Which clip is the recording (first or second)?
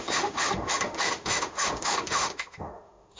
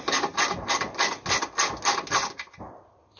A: second